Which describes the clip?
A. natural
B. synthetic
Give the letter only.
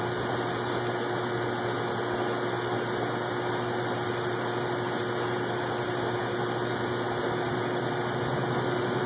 A